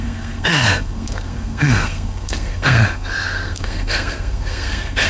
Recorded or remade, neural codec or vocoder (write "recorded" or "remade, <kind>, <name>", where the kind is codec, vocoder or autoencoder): remade, codec, SNAC